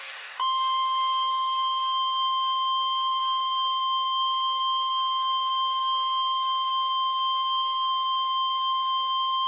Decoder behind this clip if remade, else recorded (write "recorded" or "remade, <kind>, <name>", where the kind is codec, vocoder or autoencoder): remade, codec, DAC